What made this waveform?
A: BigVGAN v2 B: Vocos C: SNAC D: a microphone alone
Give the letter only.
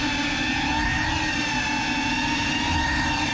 D